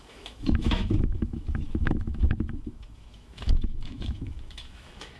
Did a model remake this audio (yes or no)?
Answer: yes